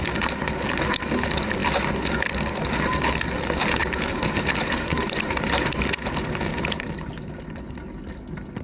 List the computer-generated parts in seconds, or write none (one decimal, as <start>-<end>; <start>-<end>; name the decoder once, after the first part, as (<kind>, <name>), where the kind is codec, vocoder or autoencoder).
3.8-6.9 (vocoder, BigVGAN v2)